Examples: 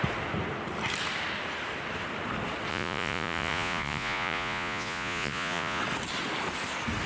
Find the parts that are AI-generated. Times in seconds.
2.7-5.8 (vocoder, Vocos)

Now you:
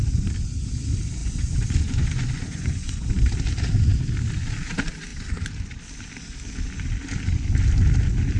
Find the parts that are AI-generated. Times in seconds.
1.2-3.1 (vocoder, Vocos)